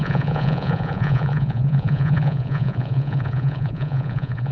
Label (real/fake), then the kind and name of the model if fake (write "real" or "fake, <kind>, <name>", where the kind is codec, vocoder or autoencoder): fake, vocoder, Vocos